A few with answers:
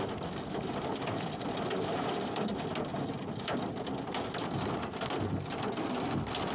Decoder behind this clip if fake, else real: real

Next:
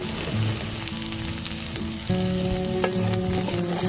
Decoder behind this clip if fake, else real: real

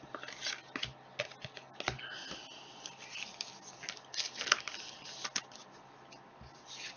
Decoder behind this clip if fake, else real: real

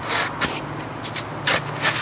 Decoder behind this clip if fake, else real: real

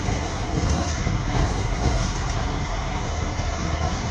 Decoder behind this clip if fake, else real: fake, codec, SNAC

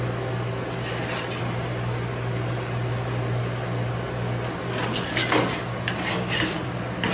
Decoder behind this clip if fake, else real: real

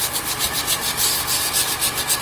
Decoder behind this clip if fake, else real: real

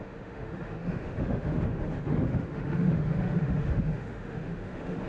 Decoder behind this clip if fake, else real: fake, autoencoder, DAC-VAE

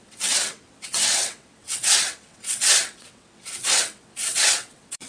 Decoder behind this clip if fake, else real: fake, vocoder, WaveNeXt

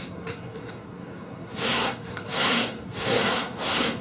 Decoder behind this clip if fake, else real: fake, codec, SNAC